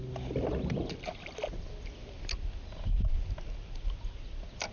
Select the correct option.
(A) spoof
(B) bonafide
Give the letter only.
B